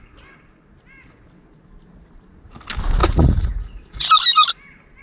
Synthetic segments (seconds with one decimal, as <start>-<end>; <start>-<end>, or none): 3.0-4.1